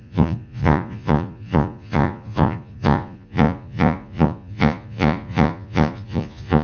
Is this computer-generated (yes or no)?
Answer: yes